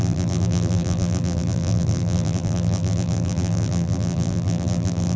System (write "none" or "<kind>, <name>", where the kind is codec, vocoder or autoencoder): vocoder, BigVGAN v2